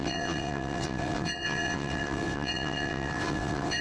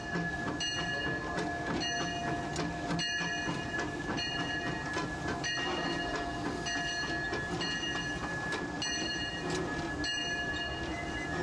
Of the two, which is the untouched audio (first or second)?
second